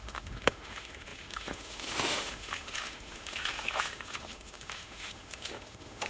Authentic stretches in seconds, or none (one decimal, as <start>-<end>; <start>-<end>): none